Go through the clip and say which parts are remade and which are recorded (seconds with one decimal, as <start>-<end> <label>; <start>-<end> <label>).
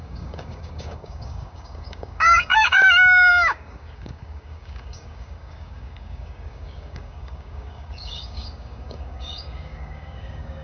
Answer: 0.0-10.6 remade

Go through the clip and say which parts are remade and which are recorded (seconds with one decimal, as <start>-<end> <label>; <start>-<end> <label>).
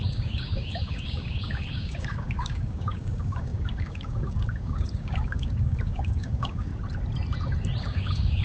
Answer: 0.0-6.7 remade; 6.7-7.8 recorded; 7.8-8.4 remade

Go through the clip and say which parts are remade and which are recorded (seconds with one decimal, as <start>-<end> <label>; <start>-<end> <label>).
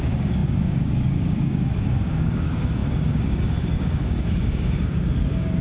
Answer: 0.0-5.6 remade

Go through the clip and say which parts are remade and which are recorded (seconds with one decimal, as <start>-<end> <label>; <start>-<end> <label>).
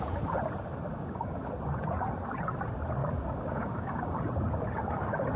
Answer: 0.0-0.9 recorded; 0.9-1.5 remade; 1.5-3.0 recorded; 3.0-4.2 remade; 4.2-5.4 recorded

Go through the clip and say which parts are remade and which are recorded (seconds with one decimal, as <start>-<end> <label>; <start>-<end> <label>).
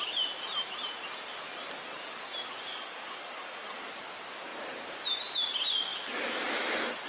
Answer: 0.0-2.7 recorded; 2.7-3.9 remade; 3.9-7.1 recorded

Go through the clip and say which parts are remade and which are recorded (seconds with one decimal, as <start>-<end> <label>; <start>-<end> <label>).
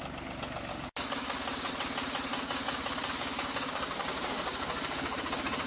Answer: 0.0-0.7 recorded; 0.7-1.7 remade; 1.7-2.3 recorded; 2.3-5.7 remade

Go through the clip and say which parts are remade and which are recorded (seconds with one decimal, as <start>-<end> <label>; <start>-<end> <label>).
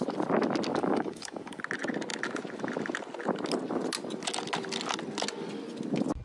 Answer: 0.0-0.7 recorded; 0.7-1.6 remade; 1.6-6.2 recorded